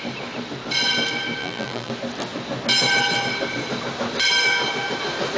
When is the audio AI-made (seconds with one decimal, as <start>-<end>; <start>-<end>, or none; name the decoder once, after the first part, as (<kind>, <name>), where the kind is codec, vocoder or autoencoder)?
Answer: 1.4-1.9 (vocoder, BigVGAN v2)